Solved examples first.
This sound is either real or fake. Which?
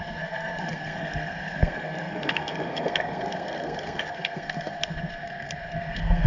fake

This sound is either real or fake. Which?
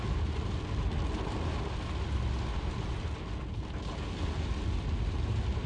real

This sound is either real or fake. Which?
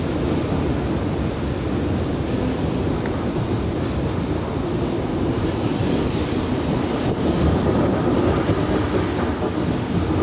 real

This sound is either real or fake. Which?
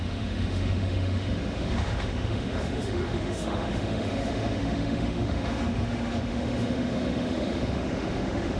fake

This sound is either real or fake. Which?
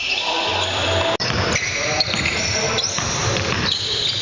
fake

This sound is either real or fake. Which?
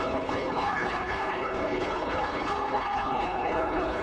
fake